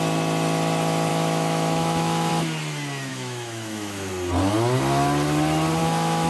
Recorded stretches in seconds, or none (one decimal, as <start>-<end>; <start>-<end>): 0.0-1.1; 2.3-3.1; 4.1-5.8